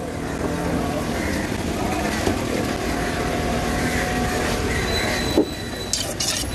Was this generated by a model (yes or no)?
no